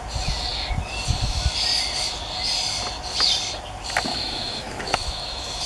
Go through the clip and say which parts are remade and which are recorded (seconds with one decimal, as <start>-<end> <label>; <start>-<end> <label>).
0.0-4.1 recorded; 4.1-5.7 remade